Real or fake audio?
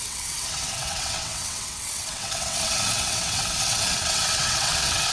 fake